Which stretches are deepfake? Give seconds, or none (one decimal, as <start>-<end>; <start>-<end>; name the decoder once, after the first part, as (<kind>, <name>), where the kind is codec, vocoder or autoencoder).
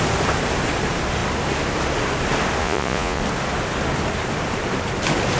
2.6-3.2 (vocoder, Vocos)